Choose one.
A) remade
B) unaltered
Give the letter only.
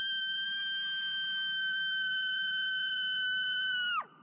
A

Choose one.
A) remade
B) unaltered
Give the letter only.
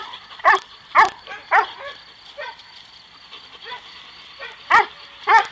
B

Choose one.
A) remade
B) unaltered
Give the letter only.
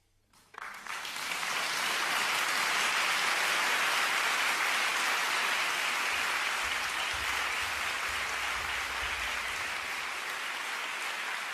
B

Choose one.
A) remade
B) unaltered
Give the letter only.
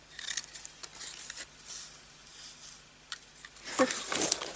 B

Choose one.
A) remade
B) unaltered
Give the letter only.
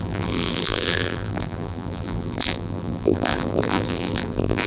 A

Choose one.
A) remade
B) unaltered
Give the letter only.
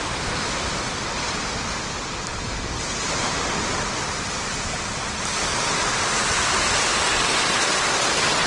B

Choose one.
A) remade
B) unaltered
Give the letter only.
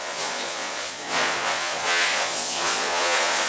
A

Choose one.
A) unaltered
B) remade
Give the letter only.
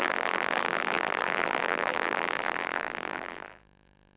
B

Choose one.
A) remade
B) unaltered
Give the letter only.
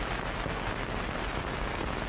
B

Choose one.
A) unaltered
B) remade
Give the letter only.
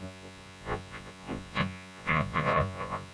B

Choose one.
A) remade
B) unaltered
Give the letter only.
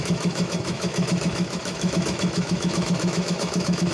A